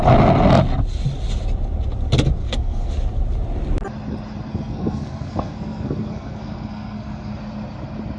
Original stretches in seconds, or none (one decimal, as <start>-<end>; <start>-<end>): 0.0-2.4; 2.9-4.5; 7.3-8.2